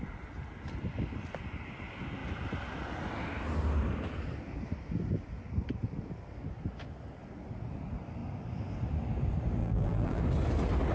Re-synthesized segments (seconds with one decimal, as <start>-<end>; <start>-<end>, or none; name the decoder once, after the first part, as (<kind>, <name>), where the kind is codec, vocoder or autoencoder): 9.6-10.2 (vocoder, BigVGAN v2)